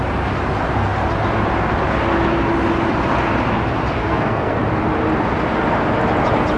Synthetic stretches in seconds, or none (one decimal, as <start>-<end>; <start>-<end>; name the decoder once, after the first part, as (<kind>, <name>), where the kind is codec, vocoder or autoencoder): 4.0-4.6 (codec, SNAC)